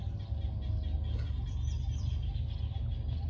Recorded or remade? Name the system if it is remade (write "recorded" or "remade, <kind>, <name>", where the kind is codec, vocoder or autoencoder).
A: recorded